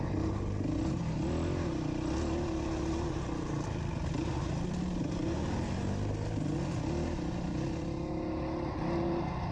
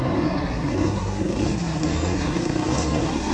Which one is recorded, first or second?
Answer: first